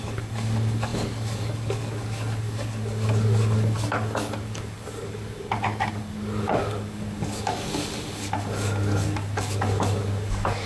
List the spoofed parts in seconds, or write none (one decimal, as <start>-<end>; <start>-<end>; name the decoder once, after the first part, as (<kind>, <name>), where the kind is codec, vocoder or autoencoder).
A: 0.0-10.7 (codec, DAC)